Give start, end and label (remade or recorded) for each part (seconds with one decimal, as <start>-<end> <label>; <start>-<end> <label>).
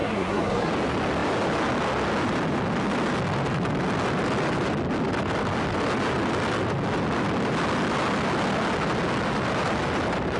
0.0-0.7 remade; 0.7-10.4 recorded